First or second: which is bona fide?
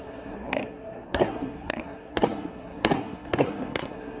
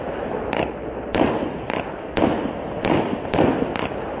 second